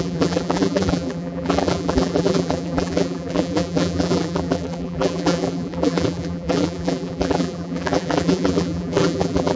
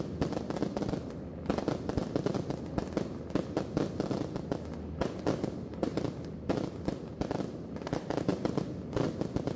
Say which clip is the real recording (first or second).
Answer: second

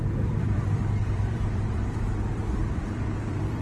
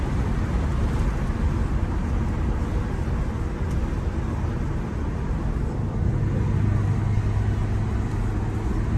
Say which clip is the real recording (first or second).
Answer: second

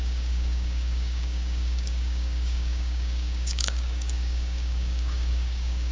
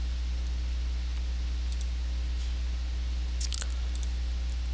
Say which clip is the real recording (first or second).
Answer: second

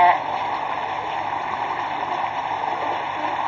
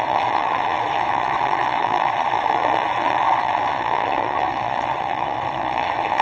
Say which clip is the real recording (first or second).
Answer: first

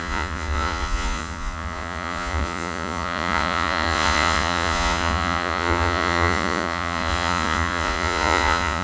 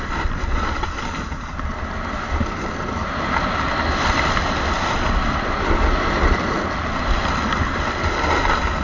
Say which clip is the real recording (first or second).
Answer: second